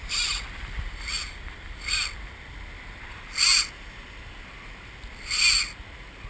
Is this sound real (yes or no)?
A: yes